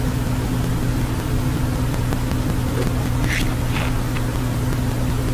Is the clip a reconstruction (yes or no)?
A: no